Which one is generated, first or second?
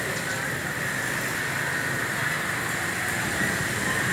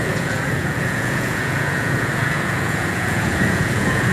second